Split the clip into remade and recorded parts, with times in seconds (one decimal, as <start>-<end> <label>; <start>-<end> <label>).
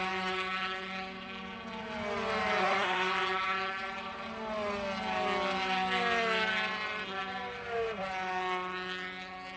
0.0-2.6 recorded; 2.6-3.1 remade; 3.1-9.6 recorded